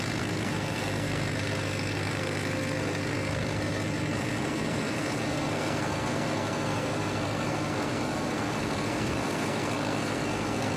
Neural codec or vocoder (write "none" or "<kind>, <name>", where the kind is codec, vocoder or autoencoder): codec, SNAC